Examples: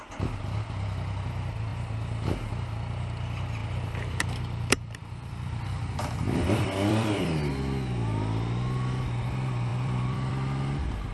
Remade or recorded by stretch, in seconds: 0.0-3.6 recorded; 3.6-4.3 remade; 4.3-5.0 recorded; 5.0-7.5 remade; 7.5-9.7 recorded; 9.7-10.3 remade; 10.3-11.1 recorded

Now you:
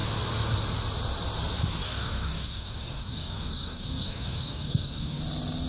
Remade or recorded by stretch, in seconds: 0.0-1.8 recorded; 1.8-5.2 remade; 5.2-5.7 recorded

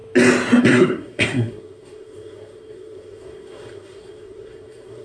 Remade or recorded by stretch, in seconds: 0.0-0.6 recorded; 0.6-5.0 remade

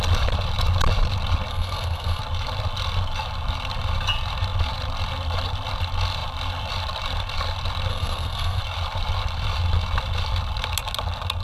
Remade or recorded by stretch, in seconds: 0.0-1.5 recorded; 1.5-2.2 remade; 2.2-7.9 recorded; 7.9-8.6 remade; 8.6-11.4 recorded